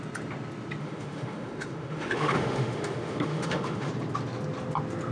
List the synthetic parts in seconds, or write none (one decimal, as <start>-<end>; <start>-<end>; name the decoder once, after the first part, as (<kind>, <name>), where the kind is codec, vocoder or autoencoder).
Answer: 0.8-3.9 (autoencoder, DAC-VAE)